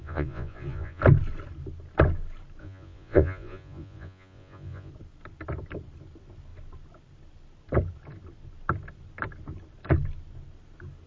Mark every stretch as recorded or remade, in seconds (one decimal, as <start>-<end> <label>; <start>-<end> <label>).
0.0-1.0 remade; 1.0-2.6 recorded; 2.6-4.9 remade; 4.9-11.1 recorded